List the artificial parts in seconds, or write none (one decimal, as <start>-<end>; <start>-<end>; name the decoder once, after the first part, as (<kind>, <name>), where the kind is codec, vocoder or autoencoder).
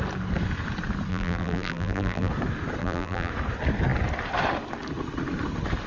1.1-2.3 (vocoder, BigVGAN v2); 2.8-3.3